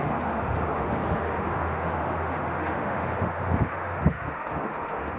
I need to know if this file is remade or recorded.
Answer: remade